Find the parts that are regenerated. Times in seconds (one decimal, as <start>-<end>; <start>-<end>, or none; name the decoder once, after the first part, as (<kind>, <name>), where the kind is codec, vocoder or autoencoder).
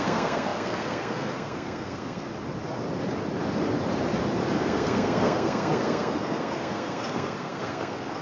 0.0-2.3 (codec, SNAC); 4.6-8.2